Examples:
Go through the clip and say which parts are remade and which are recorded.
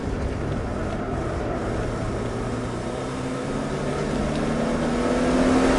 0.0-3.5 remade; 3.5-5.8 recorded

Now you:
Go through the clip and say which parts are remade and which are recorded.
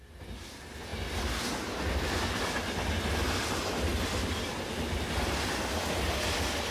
0.0-6.7 recorded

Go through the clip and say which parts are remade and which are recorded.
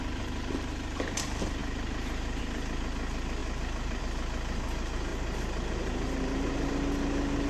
0.0-1.6 recorded; 1.6-2.4 remade; 2.4-3.4 recorded; 3.4-4.0 remade; 4.0-5.1 recorded; 5.1-6.7 remade; 6.7-7.5 recorded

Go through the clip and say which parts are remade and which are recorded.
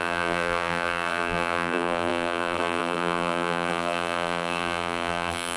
0.0-5.6 remade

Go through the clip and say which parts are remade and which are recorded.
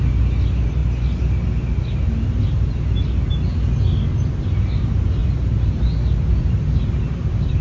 0.0-5.2 recorded; 5.2-5.8 remade; 5.8-7.6 recorded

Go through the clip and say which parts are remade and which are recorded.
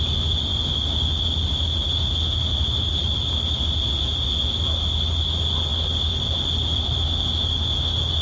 0.0-5.7 recorded; 5.7-7.0 remade; 7.0-8.2 recorded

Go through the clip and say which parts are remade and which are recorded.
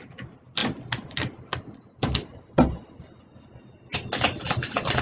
0.0-5.0 recorded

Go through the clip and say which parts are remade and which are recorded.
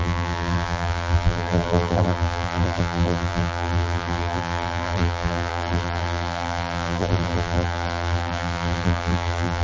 0.0-9.6 remade